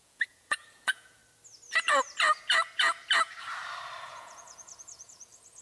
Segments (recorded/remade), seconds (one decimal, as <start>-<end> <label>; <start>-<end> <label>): 0.0-1.2 remade; 1.2-4.0 recorded; 4.0-5.6 remade

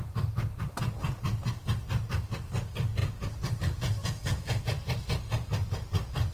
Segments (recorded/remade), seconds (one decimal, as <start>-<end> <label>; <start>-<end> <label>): 0.0-4.0 recorded; 4.0-4.6 remade; 4.6-6.3 recorded

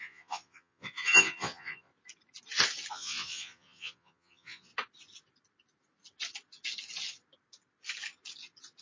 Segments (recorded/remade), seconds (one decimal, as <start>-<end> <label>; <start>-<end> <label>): 0.0-1.9 remade; 1.9-2.9 recorded; 2.9-4.7 remade; 4.7-8.8 recorded